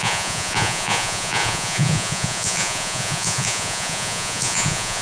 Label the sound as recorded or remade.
remade